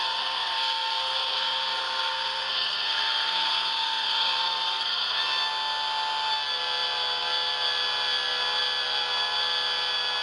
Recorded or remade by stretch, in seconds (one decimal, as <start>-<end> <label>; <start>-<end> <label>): 0.0-5.2 remade; 5.2-10.2 recorded